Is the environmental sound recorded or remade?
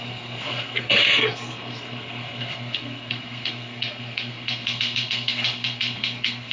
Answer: remade